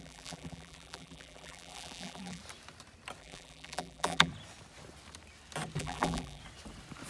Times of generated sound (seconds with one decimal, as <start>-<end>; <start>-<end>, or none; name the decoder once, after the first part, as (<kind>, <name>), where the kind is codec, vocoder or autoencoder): 0.0-2.4 (vocoder, BigVGAN v2); 3.2-4.3; 5.8-6.4